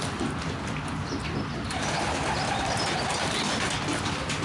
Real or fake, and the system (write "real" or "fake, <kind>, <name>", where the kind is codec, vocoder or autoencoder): real